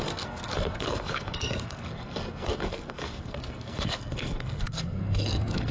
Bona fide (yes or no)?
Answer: no